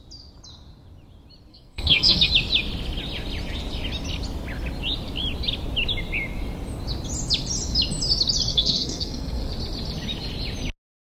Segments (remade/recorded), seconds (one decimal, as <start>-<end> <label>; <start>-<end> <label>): 0.0-1.5 recorded; 1.5-2.3 remade; 2.3-8.5 recorded; 8.5-9.5 remade; 9.5-11.1 recorded